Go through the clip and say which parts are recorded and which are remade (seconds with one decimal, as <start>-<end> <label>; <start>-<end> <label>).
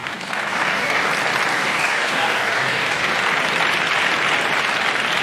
0.0-1.1 remade; 1.1-1.5 recorded; 1.5-3.1 remade; 3.1-5.2 recorded